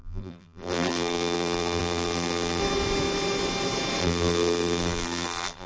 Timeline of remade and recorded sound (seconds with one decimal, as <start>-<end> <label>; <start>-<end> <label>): 0.0-2.6 remade; 2.6-4.0 recorded; 4.0-5.7 remade